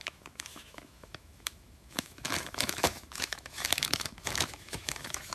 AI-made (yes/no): yes